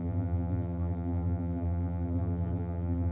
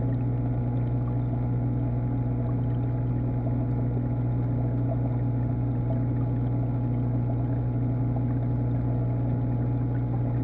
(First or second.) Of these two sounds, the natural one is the second